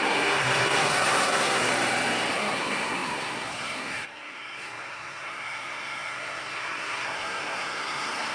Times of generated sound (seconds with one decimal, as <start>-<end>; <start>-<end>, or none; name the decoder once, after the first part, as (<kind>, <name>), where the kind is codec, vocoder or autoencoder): 0.0-1.7 (codec, SNAC); 2.3-8.3